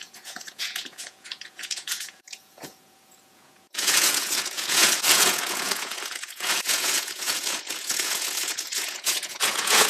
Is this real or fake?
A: fake